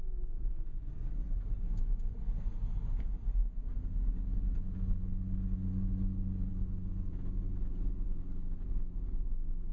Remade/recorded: recorded